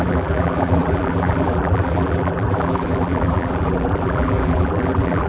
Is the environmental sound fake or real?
fake